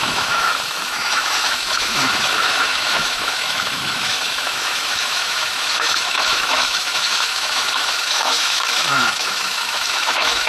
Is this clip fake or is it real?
fake